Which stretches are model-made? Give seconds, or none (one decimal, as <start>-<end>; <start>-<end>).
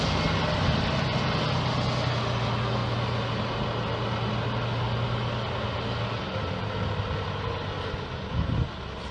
none